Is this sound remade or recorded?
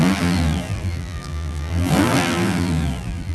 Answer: remade